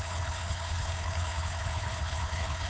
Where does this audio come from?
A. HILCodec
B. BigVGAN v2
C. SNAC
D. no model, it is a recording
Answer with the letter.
A